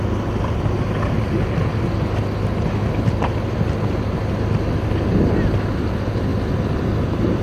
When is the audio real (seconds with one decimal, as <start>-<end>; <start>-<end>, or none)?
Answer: 0.0-6.3